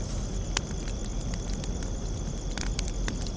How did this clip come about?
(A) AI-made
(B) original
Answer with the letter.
A